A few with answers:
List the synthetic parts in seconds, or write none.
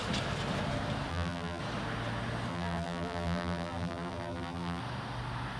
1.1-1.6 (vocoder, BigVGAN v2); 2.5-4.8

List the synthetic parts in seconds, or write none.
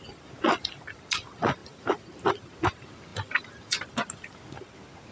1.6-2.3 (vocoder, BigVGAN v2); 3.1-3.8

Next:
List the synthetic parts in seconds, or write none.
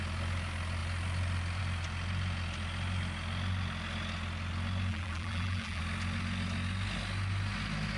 4.9-5.8 (vocoder, BigVGAN v2)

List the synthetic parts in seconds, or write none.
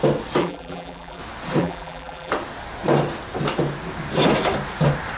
0.4-1.2 (vocoder, BigVGAN v2); 1.6-2.3